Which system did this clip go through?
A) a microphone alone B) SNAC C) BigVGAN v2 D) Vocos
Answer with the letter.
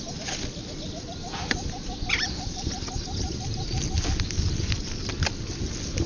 A